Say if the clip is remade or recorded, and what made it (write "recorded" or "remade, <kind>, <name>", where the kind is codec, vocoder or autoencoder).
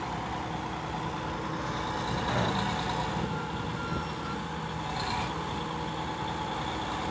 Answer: recorded